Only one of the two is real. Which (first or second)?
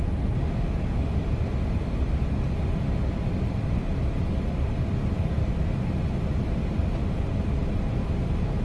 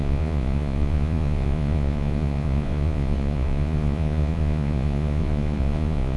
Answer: first